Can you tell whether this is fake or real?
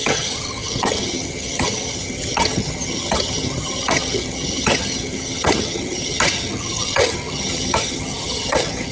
fake